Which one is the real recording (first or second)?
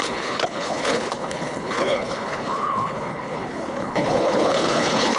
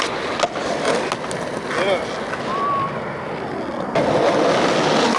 second